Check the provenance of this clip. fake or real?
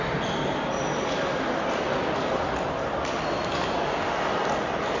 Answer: real